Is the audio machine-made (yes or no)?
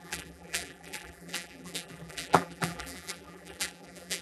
yes